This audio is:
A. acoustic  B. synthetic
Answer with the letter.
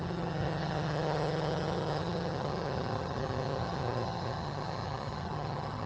B